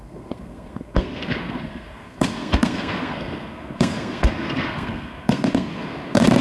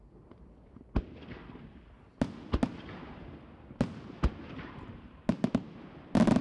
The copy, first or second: first